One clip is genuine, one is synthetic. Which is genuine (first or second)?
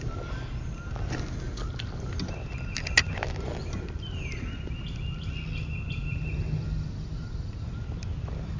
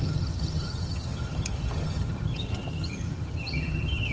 first